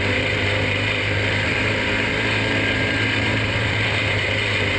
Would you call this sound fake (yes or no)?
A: yes